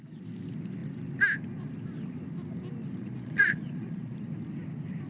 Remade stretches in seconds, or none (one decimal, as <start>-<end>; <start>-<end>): 3.0-4.2